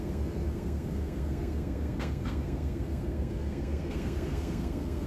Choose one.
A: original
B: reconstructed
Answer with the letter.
B